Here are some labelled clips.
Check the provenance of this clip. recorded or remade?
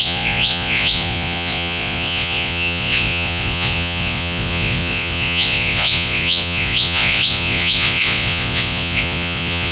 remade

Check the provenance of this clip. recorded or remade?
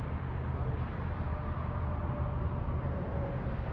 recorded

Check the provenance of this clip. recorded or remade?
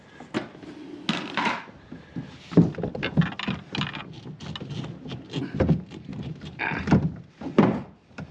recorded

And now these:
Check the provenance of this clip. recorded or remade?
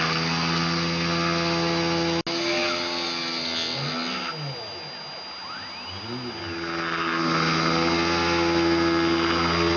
recorded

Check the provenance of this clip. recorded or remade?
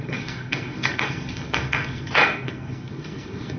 remade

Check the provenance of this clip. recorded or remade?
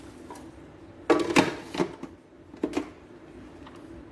recorded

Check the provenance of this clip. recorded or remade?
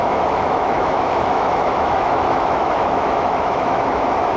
remade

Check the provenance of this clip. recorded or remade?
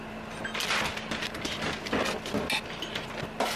recorded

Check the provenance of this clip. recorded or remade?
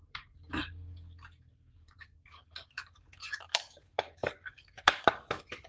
remade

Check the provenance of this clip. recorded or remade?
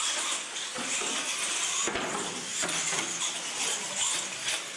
recorded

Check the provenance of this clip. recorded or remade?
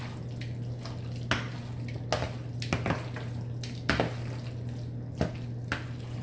recorded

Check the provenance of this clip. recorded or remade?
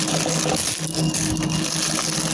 recorded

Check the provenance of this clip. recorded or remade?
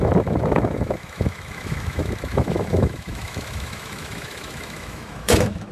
remade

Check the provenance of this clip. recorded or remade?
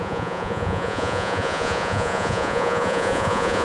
remade